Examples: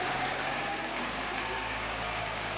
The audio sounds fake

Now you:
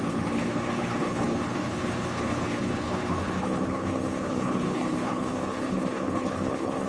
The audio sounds fake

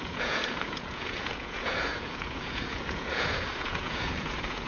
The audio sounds fake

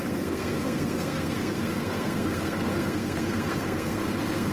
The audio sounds fake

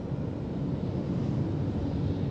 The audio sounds real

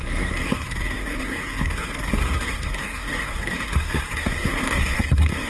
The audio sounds fake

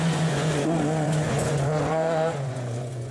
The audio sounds fake